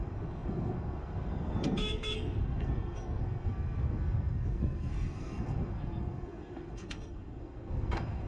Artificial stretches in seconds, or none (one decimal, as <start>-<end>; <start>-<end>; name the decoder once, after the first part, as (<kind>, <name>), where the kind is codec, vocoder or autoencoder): 0.0-8.3 (codec, SNAC)